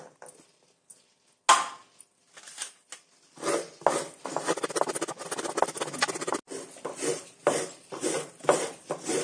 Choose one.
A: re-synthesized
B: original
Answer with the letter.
B